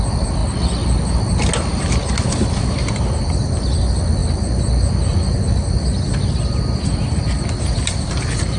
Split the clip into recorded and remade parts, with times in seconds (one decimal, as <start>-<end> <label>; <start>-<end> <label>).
0.0-8.6 recorded